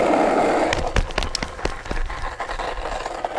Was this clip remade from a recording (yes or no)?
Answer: no